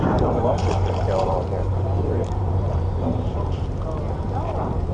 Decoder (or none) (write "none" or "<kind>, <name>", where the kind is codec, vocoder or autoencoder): vocoder, BigVGAN v2